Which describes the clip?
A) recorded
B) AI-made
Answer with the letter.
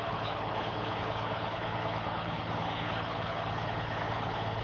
B